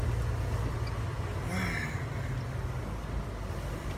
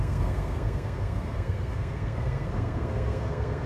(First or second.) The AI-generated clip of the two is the second